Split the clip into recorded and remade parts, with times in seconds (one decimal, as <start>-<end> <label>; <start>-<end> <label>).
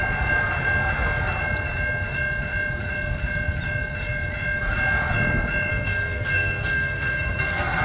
0.0-5.7 recorded; 5.7-7.8 remade